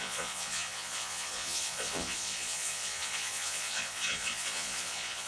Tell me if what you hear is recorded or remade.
remade